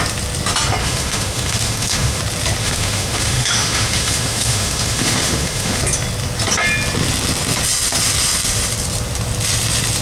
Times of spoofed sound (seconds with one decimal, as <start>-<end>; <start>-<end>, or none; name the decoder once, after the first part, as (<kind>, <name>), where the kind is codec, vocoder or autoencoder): 0.8-2.2 (autoencoder, DAC-VAE); 2.6-5.8